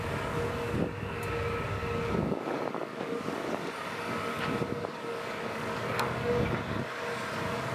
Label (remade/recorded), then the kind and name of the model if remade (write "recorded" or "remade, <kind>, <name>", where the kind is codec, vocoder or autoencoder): remade, codec, DAC